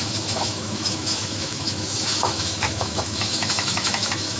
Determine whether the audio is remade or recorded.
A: remade